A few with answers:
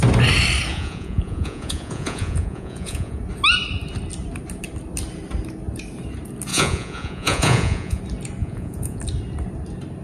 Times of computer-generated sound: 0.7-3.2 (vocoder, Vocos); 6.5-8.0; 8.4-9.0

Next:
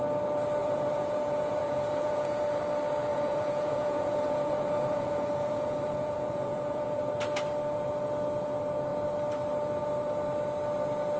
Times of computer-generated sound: 0.6-2.6 (vocoder, Vocos); 3.1-7.0

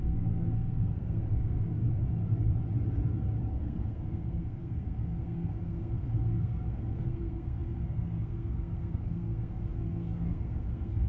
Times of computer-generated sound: 0.0-1.8 (codec, SNAC); 3.5-11.1

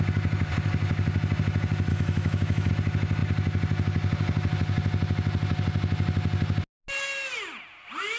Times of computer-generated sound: 1.9-2.7 (autoencoder, DAC-VAE)

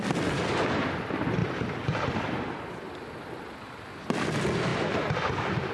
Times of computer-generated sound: none

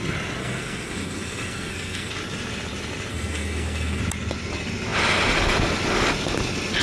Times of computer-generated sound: 0.4-2.1 (codec, SNAC); 3.1-4.0

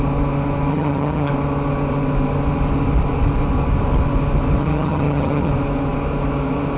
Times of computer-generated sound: 0.7-1.3 (vocoder, HiFi-GAN); 4.6-5.5

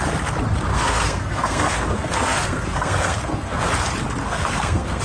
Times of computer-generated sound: 0.7-3.7 (codec, SNAC); 4.2-5.0